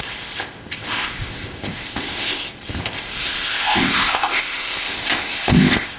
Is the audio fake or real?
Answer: fake